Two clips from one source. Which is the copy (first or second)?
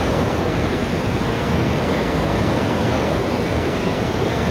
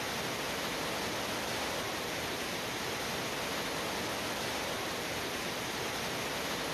first